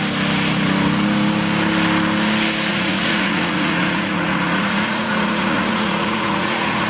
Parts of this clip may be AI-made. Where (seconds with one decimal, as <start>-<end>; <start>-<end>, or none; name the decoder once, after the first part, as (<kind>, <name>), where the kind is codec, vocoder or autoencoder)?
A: 2.7-6.9 (vocoder, Vocos)

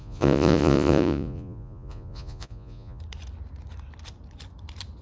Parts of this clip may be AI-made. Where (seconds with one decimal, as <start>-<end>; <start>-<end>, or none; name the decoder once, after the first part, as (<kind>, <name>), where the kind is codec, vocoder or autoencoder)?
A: 0.0-3.0 (vocoder, Vocos)

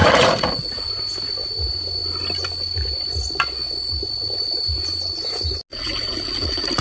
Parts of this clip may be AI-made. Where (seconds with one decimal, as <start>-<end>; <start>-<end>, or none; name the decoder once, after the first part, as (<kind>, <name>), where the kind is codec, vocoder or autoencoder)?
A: 0.0-0.9 (vocoder, Vocos); 5.7-6.8

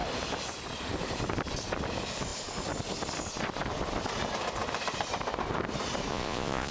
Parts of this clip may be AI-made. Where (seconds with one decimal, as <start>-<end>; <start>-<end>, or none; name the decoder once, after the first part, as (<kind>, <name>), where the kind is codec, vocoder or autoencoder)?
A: 6.1-6.7 (vocoder, Vocos)